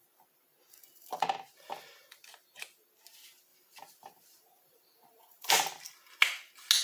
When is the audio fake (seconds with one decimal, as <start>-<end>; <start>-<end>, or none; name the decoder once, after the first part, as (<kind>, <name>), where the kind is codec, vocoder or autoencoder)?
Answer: 0.5-1.7 (vocoder, BigVGAN v2); 3.5-5.5